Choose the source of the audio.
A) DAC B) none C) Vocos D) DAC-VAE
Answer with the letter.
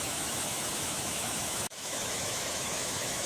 D